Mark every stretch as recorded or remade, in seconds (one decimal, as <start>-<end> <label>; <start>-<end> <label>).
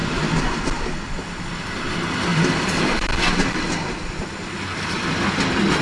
0.0-0.6 remade; 0.6-2.3 recorded; 2.3-5.3 remade; 5.3-5.8 recorded